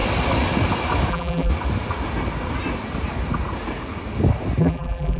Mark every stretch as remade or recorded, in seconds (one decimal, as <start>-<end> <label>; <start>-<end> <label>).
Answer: 0.0-1.1 recorded; 1.1-1.5 remade; 1.5-4.6 recorded; 4.6-5.2 remade

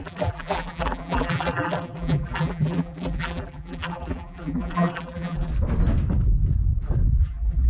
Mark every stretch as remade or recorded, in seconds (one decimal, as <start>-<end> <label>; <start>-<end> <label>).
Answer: 0.0-5.5 remade; 5.5-7.2 recorded; 7.2-7.7 remade

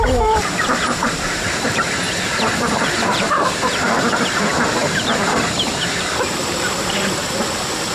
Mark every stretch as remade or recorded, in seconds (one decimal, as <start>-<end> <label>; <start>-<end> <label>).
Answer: 0.0-7.9 remade

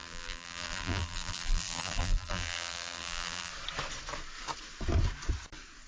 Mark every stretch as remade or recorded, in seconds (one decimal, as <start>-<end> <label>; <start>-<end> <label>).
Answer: 0.0-3.5 remade; 3.5-5.9 recorded

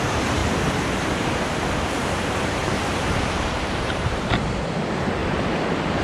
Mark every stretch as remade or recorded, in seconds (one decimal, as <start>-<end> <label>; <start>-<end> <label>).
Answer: 0.0-0.4 remade; 0.4-1.6 recorded; 1.6-6.0 remade

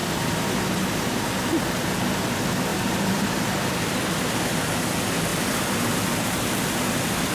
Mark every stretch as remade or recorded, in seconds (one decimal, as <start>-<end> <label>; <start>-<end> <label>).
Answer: 0.0-2.7 recorded; 2.7-4.8 remade; 4.8-5.3 recorded; 5.3-6.6 remade; 6.6-7.3 recorded